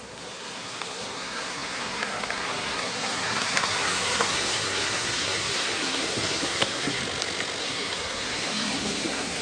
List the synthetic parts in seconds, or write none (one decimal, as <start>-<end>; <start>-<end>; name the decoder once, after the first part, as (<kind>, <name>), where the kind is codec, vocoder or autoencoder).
0.0-7.0 (codec, SNAC); 7.6-9.4